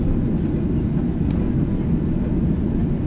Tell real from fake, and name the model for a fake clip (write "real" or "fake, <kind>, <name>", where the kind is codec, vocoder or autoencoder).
real